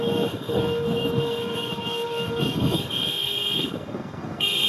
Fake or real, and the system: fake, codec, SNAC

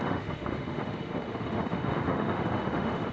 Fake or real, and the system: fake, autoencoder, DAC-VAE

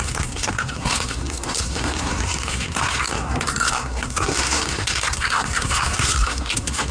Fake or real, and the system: fake, codec, SNAC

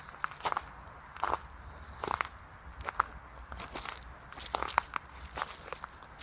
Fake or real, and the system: real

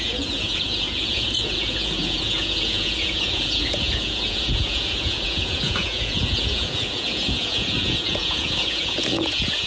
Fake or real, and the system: fake, vocoder, Vocos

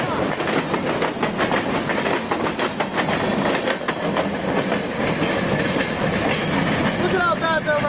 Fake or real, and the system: real